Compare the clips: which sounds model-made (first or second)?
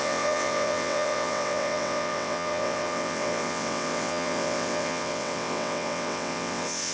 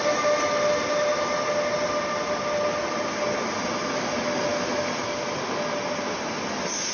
first